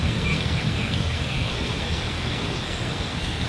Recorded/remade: remade